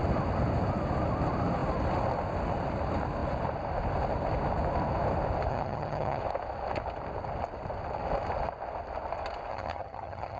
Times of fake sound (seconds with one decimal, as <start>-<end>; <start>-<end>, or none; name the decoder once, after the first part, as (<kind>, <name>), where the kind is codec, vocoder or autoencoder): 5.5-6.2 (vocoder, HiFi-GAN); 9.5-10.4